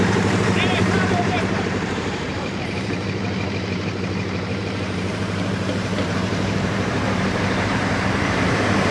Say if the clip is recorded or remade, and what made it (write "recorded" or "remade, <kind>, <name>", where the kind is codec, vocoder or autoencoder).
remade, vocoder, BigVGAN v2